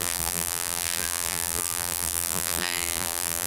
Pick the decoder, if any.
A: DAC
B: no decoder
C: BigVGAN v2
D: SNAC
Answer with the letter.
C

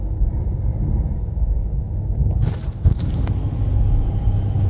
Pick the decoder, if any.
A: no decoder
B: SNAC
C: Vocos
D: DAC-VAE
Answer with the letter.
A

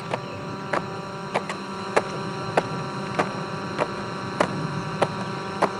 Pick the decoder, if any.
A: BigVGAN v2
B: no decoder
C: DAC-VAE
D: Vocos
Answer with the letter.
A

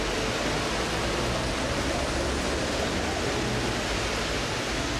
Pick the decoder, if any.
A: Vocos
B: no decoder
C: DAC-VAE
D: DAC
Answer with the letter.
B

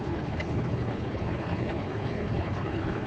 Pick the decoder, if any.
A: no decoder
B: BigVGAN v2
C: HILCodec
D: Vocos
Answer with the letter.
C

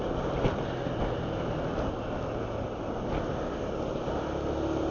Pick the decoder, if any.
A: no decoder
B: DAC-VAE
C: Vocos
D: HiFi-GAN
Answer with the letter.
A